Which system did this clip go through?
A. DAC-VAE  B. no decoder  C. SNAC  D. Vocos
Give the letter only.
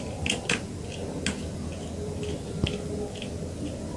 B